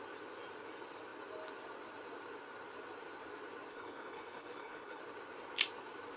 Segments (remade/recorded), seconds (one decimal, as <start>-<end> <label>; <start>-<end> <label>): 0.0-3.7 recorded; 3.7-5.0 remade; 5.0-6.2 recorded